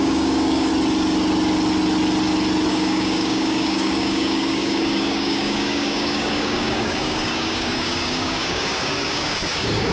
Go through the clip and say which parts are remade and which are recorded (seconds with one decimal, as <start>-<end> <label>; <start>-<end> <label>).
0.0-0.7 remade; 0.7-2.7 recorded; 2.7-9.9 remade